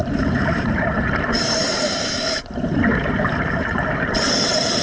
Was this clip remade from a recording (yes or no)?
yes